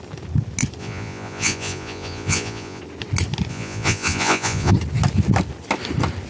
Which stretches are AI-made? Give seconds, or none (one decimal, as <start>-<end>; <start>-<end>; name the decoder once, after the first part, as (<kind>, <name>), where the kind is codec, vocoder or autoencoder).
0.8-2.8 (vocoder, Vocos); 3.5-4.7